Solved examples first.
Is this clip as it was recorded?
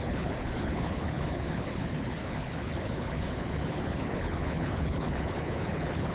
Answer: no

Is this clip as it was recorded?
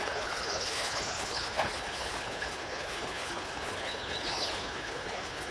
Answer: no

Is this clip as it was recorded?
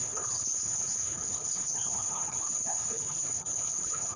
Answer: no